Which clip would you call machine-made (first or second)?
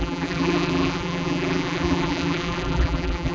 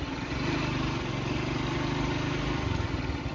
first